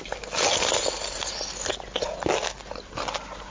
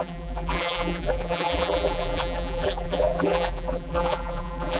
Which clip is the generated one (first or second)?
second